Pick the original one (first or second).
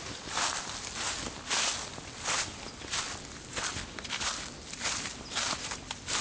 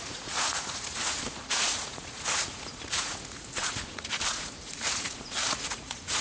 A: first